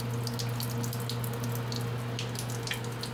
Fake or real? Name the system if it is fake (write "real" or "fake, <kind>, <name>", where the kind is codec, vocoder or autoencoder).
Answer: real